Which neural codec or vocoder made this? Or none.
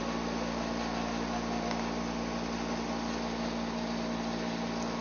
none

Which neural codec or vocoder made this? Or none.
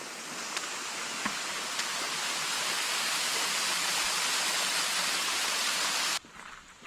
none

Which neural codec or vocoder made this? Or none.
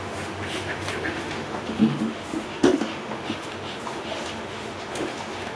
autoencoder, DAC-VAE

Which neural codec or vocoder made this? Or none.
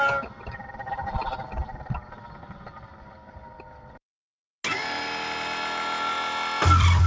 none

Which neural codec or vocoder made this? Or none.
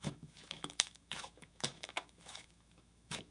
autoencoder, DAC-VAE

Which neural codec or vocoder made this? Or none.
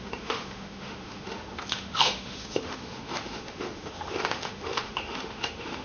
autoencoder, DAC-VAE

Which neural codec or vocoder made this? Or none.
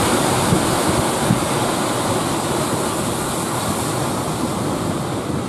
none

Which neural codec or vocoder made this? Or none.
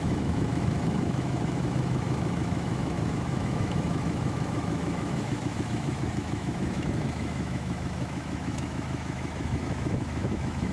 autoencoder, DAC-VAE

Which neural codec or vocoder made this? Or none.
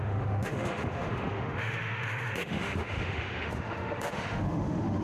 autoencoder, DAC-VAE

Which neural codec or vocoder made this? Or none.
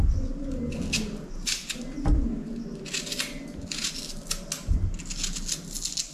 none